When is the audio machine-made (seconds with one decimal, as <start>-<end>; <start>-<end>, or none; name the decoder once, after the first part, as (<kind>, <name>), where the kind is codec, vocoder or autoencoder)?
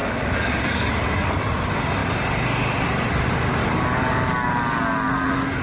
0.0-1.4 (codec, DAC); 3.6-4.5